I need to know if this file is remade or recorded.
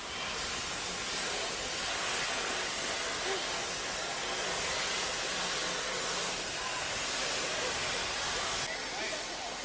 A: recorded